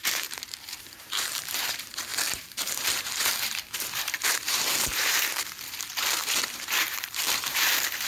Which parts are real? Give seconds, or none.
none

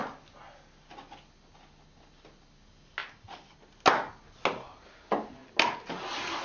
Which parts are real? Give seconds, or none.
0.0-6.4

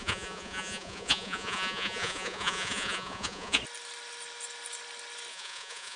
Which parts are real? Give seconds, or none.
3.6-5.3

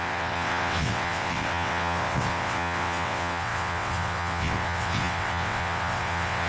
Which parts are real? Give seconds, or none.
none